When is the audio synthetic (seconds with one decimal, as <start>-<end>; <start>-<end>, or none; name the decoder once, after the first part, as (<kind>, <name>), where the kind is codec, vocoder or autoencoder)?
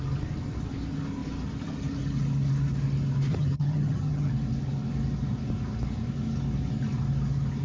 3.3-4.3 (vocoder, HiFi-GAN)